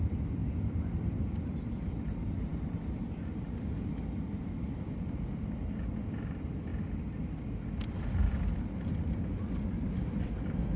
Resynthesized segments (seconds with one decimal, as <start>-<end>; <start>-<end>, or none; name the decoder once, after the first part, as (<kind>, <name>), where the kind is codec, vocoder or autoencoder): 0.0-6.7 (vocoder, BigVGAN v2); 7.8-10.8